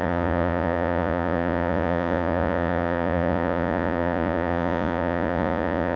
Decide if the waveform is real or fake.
fake